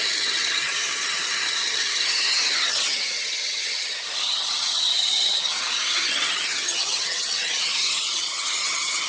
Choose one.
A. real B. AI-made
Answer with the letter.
B